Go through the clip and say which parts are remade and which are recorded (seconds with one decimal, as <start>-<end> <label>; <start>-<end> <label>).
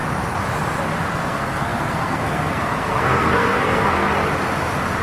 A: 0.0-1.1 recorded; 1.1-4.2 remade; 4.2-5.0 recorded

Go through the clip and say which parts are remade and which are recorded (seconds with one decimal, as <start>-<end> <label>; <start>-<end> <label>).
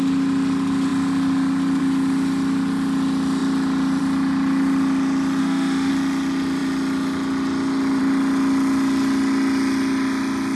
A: 0.0-5.4 recorded; 5.4-5.9 remade; 5.9-10.6 recorded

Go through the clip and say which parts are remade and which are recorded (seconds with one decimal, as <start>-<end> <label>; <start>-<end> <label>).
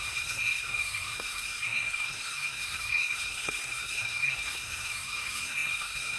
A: 0.0-6.2 remade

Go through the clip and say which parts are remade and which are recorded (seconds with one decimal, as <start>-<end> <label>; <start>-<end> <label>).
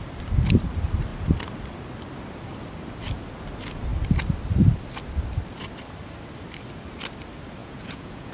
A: 0.0-7.6 recorded; 7.6-8.3 remade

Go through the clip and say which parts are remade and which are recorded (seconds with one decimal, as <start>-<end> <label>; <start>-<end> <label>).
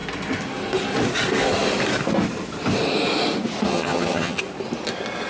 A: 0.0-3.7 recorded; 3.7-4.4 remade; 4.4-5.3 recorded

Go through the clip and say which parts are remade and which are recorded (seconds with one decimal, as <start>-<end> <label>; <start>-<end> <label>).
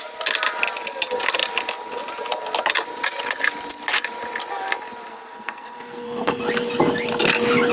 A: 0.0-5.1 recorded; 5.1-6.4 remade; 6.4-7.7 recorded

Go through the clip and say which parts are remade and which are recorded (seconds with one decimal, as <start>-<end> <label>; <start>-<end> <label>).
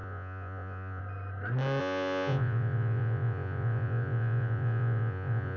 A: 0.0-1.0 remade; 1.0-1.8 recorded; 1.8-5.6 remade